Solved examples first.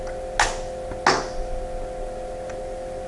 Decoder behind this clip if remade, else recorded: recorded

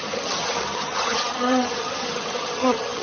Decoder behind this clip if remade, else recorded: remade, vocoder, HiFi-GAN